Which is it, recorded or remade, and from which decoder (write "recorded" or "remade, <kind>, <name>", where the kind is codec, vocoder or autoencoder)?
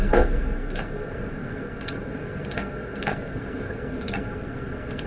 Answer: remade, codec, SNAC